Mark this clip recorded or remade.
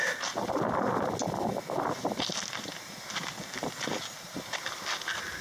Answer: recorded